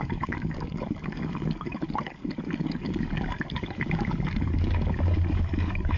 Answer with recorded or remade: remade